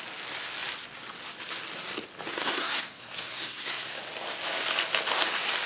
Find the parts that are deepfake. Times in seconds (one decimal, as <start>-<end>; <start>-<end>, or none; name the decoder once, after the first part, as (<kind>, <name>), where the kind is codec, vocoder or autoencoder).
2.3-4.0 (codec, SNAC)